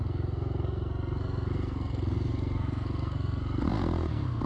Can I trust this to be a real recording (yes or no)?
no